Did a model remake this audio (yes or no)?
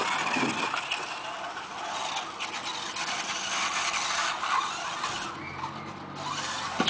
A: no